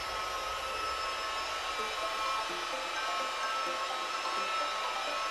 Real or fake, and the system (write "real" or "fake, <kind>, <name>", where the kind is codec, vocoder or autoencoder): real